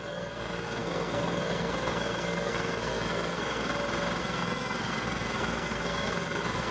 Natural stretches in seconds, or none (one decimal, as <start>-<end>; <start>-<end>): 3.7-4.2